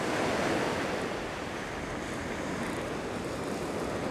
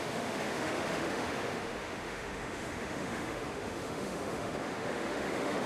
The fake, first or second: second